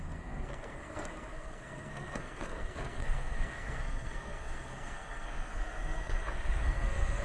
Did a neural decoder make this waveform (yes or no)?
yes